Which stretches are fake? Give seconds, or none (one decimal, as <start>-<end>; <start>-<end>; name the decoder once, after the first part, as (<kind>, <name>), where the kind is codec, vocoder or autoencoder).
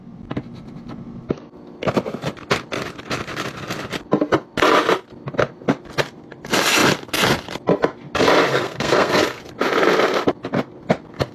8.5-9.4 (codec, SNAC)